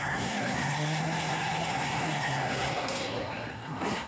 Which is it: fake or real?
fake